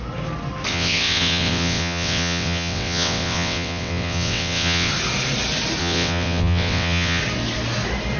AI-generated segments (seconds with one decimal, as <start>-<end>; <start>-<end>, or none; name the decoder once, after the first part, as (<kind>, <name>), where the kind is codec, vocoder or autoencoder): 0.7-4.9 (vocoder, WaveNeXt); 5.8-7.2